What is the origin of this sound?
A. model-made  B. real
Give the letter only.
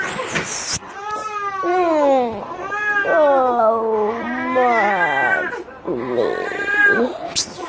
B